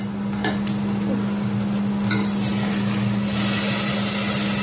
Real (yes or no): yes